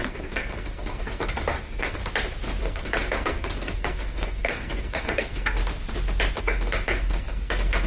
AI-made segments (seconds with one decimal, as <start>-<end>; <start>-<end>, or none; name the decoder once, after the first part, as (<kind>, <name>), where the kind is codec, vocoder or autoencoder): 0.0-2.0 (codec, SNAC); 2.6-5.6; 6.4-7.9